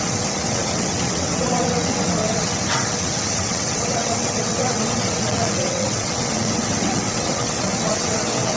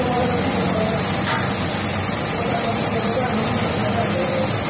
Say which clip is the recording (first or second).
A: second